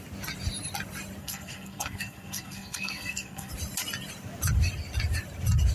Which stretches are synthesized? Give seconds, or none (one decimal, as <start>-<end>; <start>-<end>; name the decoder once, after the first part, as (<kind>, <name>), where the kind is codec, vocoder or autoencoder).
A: 1.2-3.5 (codec, SNAC)